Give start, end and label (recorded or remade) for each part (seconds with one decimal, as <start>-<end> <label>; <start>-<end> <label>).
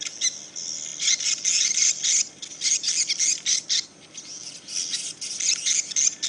0.0-6.3 recorded